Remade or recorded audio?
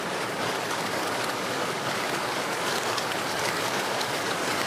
remade